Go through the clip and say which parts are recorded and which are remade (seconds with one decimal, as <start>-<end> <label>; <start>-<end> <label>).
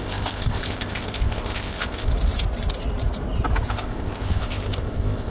0.0-2.1 remade; 2.1-3.7 recorded; 3.7-5.3 remade